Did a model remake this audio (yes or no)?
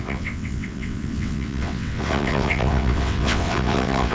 yes